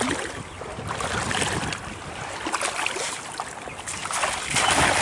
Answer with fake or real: real